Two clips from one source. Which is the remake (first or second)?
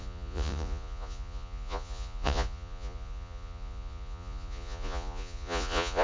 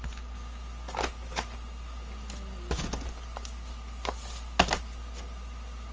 first